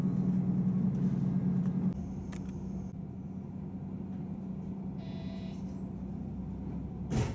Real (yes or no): yes